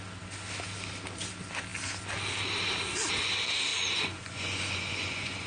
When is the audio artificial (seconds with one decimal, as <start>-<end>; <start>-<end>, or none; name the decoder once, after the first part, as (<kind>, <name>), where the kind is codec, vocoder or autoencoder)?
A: 3.7-5.5 (vocoder, Vocos)